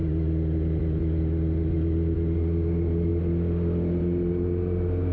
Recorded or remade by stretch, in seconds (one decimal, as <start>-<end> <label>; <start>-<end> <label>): 0.0-5.1 recorded